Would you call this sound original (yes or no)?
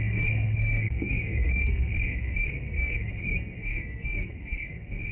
no